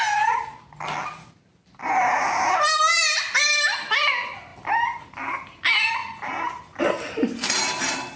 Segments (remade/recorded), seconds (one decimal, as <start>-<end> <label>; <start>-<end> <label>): 0.0-8.2 recorded